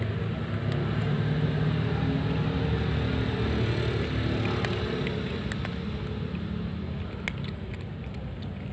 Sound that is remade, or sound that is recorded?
recorded